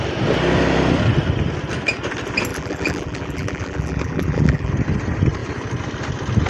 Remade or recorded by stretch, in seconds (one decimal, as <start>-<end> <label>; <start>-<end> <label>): 0.0-2.5 recorded; 2.5-4.7 remade; 4.7-6.5 recorded